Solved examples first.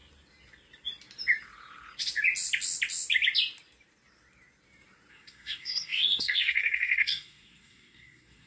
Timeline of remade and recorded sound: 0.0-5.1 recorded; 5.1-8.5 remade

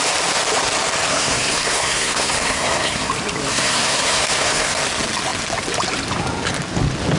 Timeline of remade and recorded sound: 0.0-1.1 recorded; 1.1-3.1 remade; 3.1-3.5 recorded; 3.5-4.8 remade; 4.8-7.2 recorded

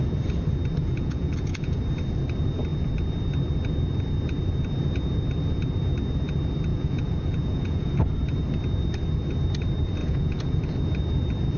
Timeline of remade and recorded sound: 0.0-0.8 recorded; 0.8-1.8 remade; 1.8-6.7 recorded; 6.7-7.9 remade; 7.9-10.0 recorded; 10.0-10.6 remade; 10.6-11.6 recorded

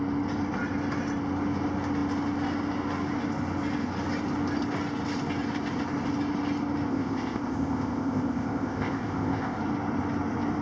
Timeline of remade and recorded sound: 0.0-6.9 recorded; 6.9-9.6 remade; 9.6-10.6 recorded